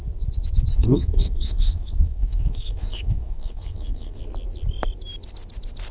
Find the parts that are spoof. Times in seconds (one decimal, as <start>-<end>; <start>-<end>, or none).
0.7-4.2